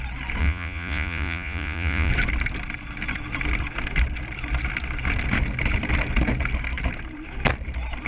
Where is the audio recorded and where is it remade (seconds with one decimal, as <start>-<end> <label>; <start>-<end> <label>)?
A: 0.0-0.4 recorded; 0.4-2.1 remade; 2.1-8.1 recorded